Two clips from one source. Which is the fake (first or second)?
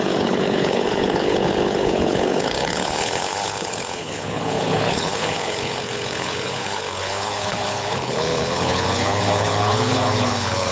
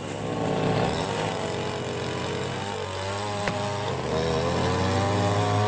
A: first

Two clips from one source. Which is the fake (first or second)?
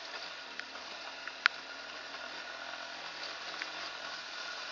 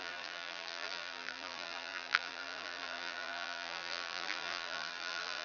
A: second